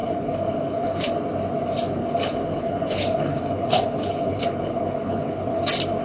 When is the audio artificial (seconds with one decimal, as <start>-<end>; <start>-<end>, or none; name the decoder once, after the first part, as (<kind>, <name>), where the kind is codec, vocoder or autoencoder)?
0.0-1.1 (codec, HILCodec); 2.0-5.6